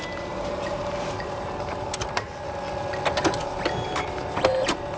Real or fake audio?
real